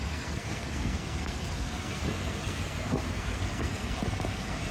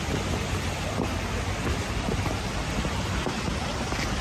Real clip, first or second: second